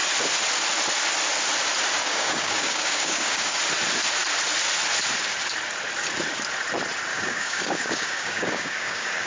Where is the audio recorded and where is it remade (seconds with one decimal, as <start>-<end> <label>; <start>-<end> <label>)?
0.0-2.0 recorded; 2.0-3.6 remade; 3.6-7.1 recorded; 7.1-9.3 remade